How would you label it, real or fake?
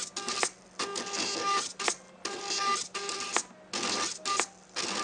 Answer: real